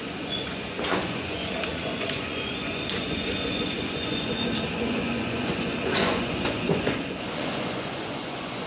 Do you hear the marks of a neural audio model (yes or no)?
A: yes